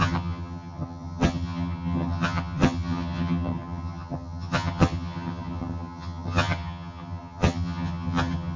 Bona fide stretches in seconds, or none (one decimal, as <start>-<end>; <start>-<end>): none